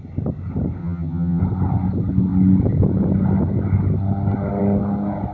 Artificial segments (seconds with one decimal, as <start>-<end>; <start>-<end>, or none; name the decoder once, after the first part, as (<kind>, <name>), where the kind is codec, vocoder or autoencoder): 0.8-1.4 (vocoder, HiFi-GAN)